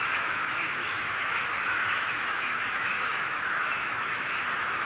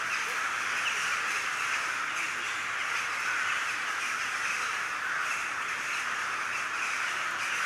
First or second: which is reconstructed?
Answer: first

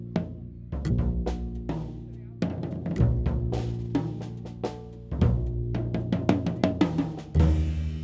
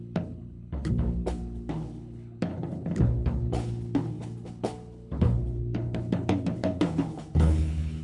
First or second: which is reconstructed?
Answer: second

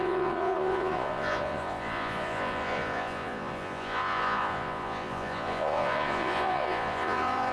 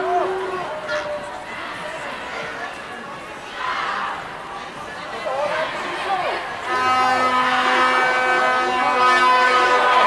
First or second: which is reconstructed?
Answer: first